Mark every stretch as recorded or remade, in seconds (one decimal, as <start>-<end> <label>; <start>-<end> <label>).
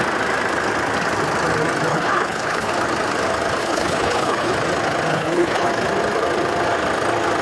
0.0-1.9 recorded; 1.9-2.7 remade; 2.7-3.6 recorded; 3.6-4.5 remade; 4.5-5.1 recorded; 5.1-5.7 remade; 5.7-7.4 recorded